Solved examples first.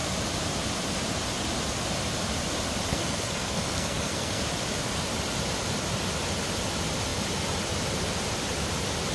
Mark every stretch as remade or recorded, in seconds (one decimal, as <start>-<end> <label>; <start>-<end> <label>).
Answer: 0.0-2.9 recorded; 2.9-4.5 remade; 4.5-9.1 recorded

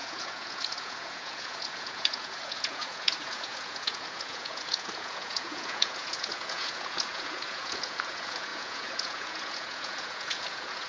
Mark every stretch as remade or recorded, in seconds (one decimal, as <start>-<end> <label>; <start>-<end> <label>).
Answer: 0.0-10.9 remade

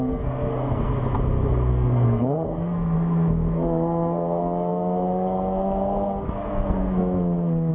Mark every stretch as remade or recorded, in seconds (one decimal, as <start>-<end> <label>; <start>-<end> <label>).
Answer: 0.0-0.9 remade; 0.9-1.7 recorded; 1.7-7.7 remade